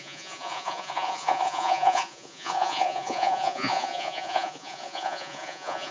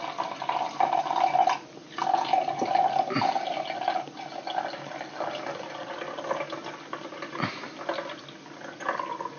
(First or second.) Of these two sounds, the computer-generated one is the first